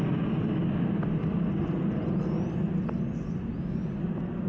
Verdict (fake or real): real